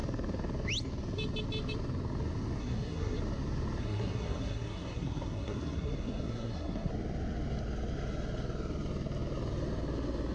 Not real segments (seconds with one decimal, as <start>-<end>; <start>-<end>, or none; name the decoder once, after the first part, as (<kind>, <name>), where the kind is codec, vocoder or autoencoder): 2.6-3.2 (codec, SNAC); 3.8-6.9